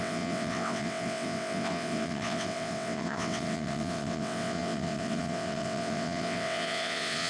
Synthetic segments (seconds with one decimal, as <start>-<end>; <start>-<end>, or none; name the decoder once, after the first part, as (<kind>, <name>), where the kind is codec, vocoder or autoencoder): 0.0-7.3 (vocoder, WaveNeXt)